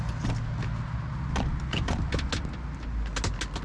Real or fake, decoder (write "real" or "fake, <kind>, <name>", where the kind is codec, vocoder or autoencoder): real